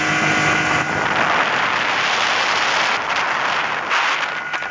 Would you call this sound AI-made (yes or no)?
no